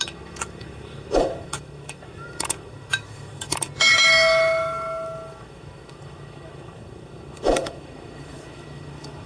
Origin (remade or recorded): remade